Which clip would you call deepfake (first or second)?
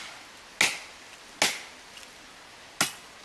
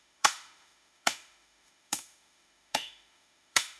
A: second